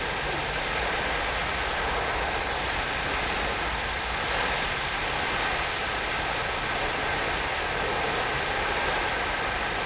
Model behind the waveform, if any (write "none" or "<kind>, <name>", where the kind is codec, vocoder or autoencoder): none